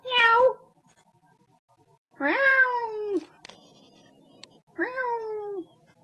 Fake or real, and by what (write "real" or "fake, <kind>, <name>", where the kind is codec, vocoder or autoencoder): fake, vocoder, BigVGAN v2